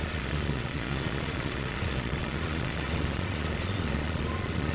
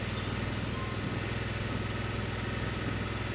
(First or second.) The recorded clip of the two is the second